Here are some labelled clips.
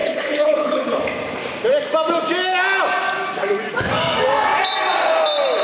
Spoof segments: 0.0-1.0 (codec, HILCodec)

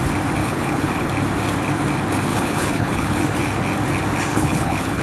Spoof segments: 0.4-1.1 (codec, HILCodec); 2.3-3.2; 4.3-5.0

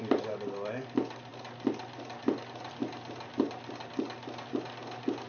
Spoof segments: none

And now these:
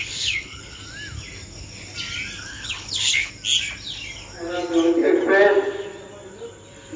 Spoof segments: 0.0-0.8 (codec, HILCodec); 2.5-3.3

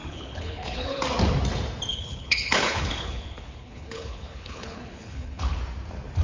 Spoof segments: 0.0-1.0 (codec, HILCodec); 1.9-5.6